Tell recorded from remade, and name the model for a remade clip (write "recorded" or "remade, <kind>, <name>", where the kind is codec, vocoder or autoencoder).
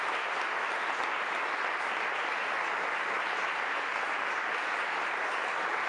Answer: recorded